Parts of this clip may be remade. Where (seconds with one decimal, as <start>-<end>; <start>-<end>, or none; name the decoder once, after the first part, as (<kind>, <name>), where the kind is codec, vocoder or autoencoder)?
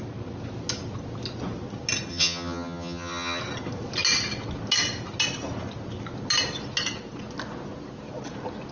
2.1-3.4 (vocoder, HiFi-GAN)